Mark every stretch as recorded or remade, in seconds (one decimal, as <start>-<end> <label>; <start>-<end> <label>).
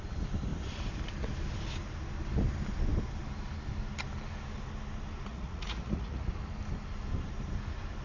0.0-5.3 recorded; 5.3-6.3 remade; 6.3-8.0 recorded